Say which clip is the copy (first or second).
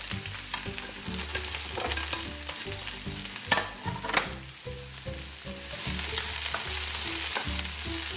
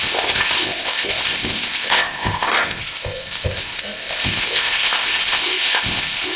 second